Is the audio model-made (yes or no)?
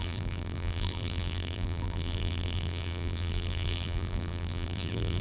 yes